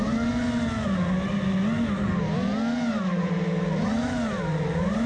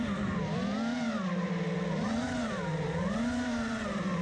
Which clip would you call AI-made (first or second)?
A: second